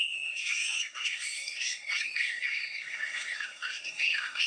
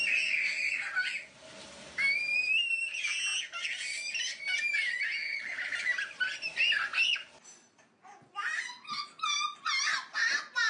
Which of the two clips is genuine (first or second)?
second